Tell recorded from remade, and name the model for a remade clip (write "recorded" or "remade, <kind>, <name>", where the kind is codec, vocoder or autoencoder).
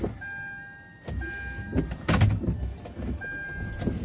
recorded